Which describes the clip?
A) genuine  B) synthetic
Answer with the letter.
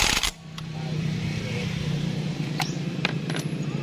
B